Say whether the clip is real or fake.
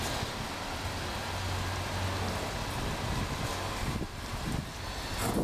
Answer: real